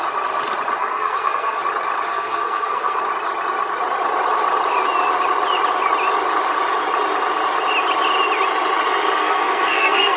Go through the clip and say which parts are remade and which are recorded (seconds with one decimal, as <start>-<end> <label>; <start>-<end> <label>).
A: 0.0-0.8 recorded; 0.8-1.6 remade; 1.6-2.1 recorded; 2.1-3.0 remade; 3.0-9.2 recorded; 9.2-10.2 remade